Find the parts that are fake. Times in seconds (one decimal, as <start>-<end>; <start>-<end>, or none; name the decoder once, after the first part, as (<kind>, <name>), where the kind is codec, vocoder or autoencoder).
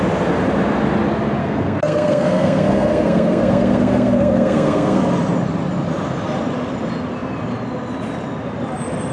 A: 1.4-5.0 (codec, SNAC)